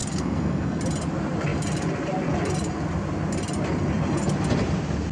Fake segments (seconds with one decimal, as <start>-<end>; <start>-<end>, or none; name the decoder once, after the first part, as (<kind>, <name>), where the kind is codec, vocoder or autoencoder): 0.0-0.8 (codec, SNAC)